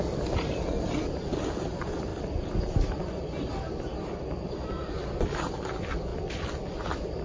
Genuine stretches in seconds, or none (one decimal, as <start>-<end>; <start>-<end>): 0.0-7.2